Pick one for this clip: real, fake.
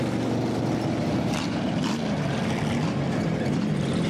real